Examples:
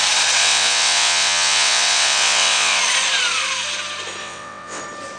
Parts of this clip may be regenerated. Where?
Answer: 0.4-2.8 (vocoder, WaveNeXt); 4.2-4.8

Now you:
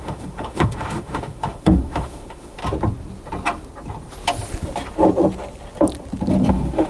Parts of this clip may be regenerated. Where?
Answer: 0.0-2.6 (autoencoder, DAC-VAE); 6.5-6.9